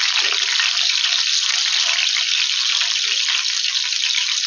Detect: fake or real real